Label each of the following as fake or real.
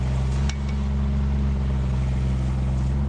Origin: real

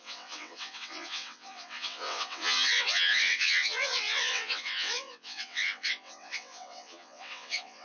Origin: fake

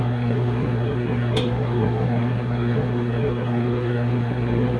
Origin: fake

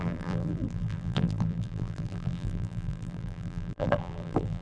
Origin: fake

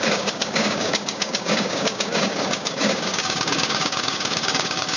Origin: fake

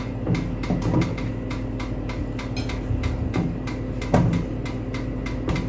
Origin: real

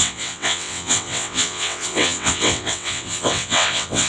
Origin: fake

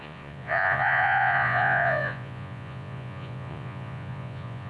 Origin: fake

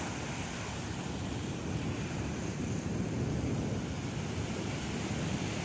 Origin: real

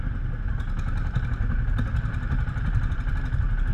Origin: real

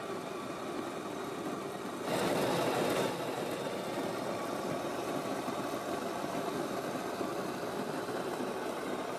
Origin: real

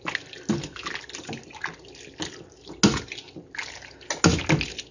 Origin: real